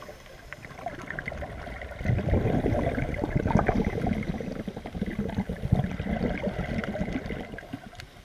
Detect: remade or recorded recorded